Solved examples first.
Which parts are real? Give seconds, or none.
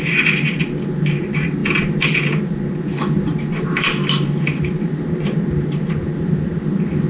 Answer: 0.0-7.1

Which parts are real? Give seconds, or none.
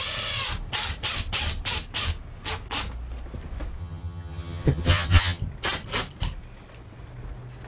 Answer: 0.0-3.8; 5.4-7.7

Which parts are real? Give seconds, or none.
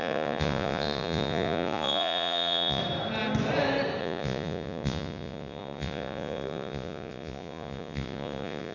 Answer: 2.8-4.0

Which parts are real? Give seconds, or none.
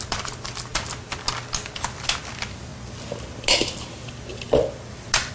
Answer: 0.0-5.3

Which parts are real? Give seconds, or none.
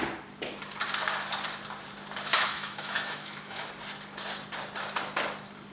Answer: 0.0-2.3; 3.7-5.7